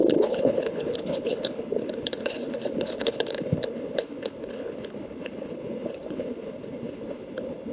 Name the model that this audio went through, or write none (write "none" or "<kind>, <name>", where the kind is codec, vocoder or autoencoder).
codec, HILCodec